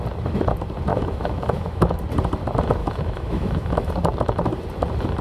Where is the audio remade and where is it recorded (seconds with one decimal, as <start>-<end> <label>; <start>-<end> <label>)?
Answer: 0.0-0.9 recorded; 0.9-2.0 remade; 2.0-2.8 recorded; 2.8-3.9 remade; 3.9-5.2 recorded